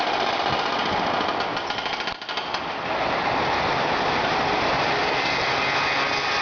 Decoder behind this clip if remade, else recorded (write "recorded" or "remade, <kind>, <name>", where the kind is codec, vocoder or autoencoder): recorded